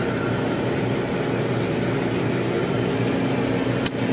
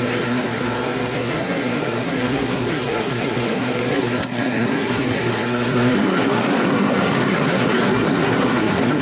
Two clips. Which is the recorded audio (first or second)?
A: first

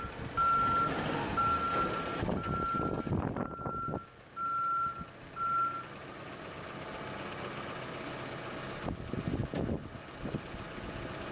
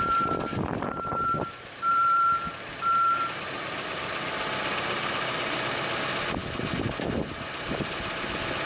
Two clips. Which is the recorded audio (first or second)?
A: first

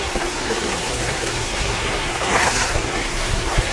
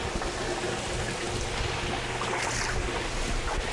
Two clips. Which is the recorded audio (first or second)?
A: second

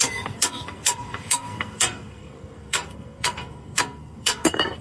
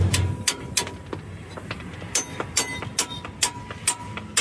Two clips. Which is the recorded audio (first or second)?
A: second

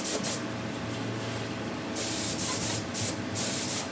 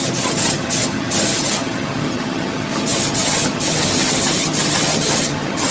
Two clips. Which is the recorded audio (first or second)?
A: first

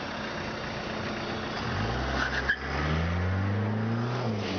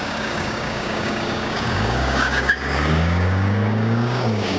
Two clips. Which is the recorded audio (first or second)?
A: first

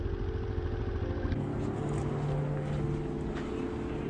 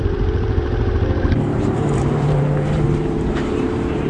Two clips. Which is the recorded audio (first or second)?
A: first